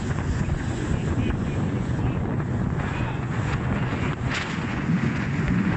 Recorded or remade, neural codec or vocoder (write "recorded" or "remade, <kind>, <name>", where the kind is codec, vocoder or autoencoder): remade, vocoder, Vocos